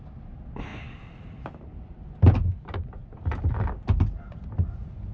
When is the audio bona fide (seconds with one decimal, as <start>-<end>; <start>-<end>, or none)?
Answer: 0.0-0.7; 2.1-3.0; 3.7-5.1